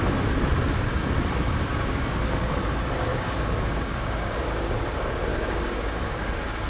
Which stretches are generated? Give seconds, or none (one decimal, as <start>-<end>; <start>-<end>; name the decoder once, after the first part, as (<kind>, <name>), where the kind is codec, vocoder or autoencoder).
1.7-2.2 (codec, DAC); 3.1-4.7; 5.3-6.3